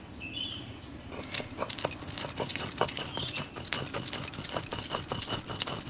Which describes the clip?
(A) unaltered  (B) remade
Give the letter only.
A